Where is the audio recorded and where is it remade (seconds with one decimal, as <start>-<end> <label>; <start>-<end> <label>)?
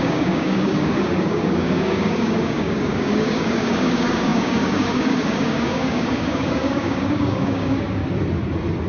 0.0-8.0 remade; 8.0-8.9 recorded